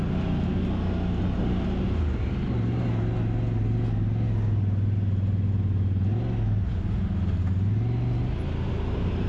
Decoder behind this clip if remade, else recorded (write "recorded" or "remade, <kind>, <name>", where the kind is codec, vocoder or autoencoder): recorded